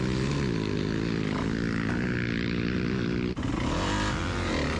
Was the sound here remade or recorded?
recorded